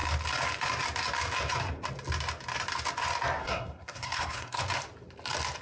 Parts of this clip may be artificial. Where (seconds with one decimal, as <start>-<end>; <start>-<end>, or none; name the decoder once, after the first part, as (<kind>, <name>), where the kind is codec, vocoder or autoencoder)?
3.4-4.6 (codec, SNAC)

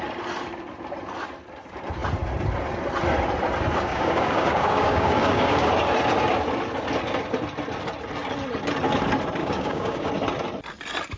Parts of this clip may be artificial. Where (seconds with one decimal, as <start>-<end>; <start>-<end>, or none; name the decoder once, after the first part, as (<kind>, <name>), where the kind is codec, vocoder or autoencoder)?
3.9-5.7 (codec, DAC); 9.4-10.1

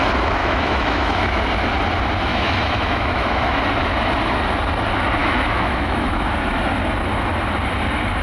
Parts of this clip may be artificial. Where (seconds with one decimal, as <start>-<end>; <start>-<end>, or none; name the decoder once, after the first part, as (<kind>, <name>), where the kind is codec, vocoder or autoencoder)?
0.4-1.4 (autoencoder, DAC-VAE); 2.3-3.6; 5.2-6.2

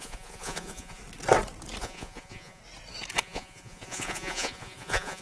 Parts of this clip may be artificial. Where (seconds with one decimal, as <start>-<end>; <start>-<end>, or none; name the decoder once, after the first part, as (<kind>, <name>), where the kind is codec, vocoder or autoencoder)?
0.0-1.0 (vocoder, Vocos); 1.8-2.6; 3.2-5.2

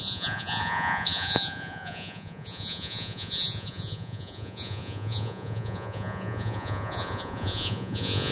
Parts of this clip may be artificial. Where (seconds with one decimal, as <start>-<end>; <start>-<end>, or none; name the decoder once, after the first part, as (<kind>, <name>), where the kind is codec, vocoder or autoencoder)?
0.0-8.3 (vocoder, Vocos)

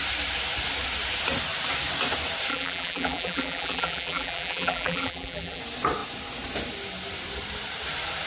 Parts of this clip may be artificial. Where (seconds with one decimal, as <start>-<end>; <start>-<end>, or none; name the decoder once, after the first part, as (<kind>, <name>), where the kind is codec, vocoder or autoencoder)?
2.5-5.6 (vocoder, BigVGAN v2)

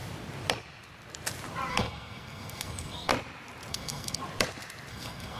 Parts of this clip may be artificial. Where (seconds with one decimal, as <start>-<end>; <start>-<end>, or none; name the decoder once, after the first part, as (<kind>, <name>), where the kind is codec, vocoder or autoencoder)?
1.7-3.1 (codec, SNAC); 3.7-4.2; 4.9-5.4

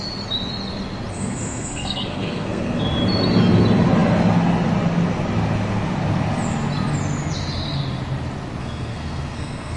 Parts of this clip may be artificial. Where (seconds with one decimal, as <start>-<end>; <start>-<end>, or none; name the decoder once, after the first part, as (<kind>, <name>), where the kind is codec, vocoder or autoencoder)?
1.1-2.8 (codec, SNAC); 8.6-9.8